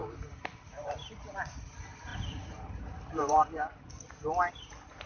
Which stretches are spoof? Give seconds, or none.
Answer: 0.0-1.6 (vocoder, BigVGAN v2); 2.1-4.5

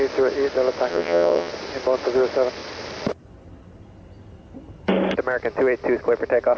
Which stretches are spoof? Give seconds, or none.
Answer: 0.9-1.5 (vocoder, WaveNeXt)

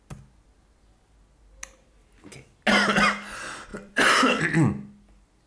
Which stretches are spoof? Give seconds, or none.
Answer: 3.7-4.4 (vocoder, BigVGAN v2)